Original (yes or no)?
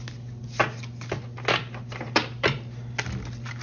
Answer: yes